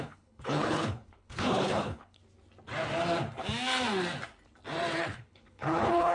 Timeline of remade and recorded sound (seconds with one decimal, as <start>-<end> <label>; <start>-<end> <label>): 0.0-2.2 remade; 2.2-5.0 recorded; 5.0-6.1 remade